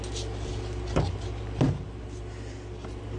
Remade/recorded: recorded